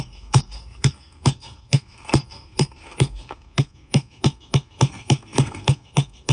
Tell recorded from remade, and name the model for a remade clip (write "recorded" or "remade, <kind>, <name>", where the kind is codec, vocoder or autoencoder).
remade, codec, SNAC